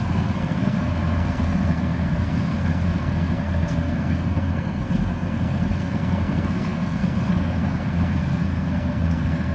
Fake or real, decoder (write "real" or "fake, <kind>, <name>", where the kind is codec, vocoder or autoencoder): fake, codec, SNAC